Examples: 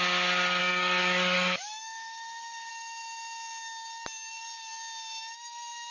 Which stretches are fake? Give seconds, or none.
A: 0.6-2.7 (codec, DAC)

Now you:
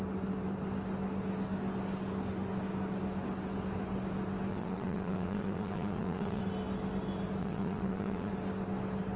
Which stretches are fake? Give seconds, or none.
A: 4.5-6.4 (vocoder, WaveNeXt); 7.4-8.3

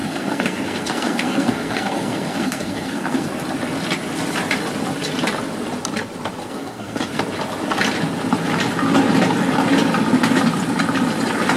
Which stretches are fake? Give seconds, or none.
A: 0.0-3.3 (codec, SNAC); 6.4-7.2

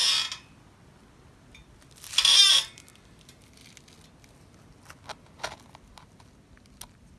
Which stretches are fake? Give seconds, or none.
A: none

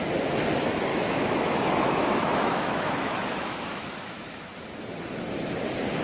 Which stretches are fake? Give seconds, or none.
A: 0.9-4.5 (autoencoder, DAC-VAE)

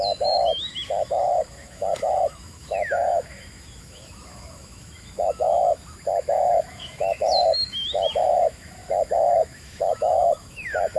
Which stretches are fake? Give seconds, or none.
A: 0.0-11.0 (autoencoder, DAC-VAE)